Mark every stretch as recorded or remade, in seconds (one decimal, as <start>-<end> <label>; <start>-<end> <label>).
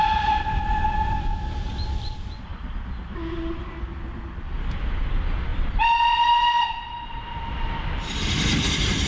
0.0-5.5 remade; 5.5-7.1 recorded; 7.1-9.1 remade